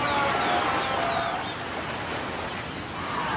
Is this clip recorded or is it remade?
recorded